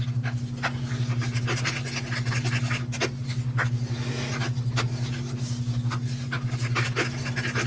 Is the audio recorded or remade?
recorded